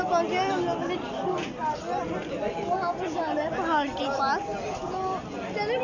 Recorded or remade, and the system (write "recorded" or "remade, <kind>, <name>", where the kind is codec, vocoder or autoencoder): recorded